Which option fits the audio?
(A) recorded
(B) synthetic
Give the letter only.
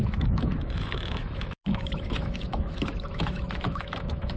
B